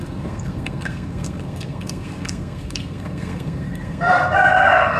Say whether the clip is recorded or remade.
remade